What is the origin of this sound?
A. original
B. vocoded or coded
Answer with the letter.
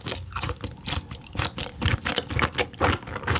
A